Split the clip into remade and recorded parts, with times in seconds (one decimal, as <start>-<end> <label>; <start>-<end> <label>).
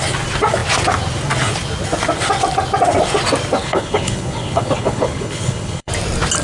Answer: 0.0-3.6 recorded; 3.6-5.9 remade; 5.9-6.4 recorded